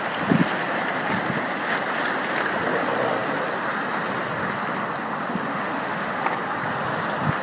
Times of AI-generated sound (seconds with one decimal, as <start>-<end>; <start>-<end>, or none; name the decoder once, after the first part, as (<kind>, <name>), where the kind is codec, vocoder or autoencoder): 5.5-6.2 (autoencoder, DAC-VAE)